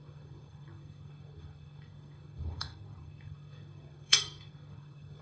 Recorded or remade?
remade